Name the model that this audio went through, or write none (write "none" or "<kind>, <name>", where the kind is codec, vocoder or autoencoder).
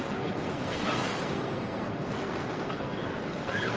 codec, SNAC